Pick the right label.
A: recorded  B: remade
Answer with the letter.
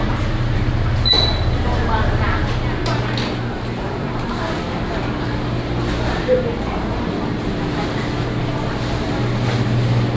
A